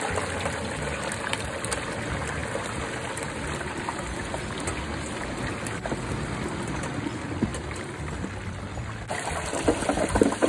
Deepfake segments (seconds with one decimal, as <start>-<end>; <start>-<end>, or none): 7.5-8.6